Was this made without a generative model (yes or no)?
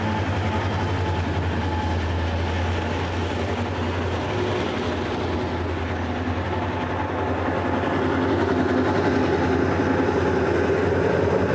yes